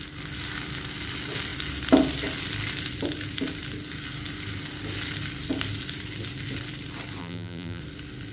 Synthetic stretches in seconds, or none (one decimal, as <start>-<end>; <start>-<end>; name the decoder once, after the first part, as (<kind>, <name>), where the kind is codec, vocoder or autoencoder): 7.2-7.8 (vocoder, BigVGAN v2)